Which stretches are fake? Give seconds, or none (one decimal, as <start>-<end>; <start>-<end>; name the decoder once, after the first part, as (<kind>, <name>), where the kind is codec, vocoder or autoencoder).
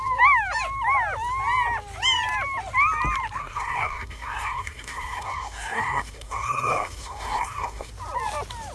3.4-7.9 (codec, SNAC)